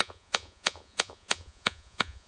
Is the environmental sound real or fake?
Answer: fake